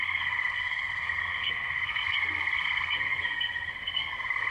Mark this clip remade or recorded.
remade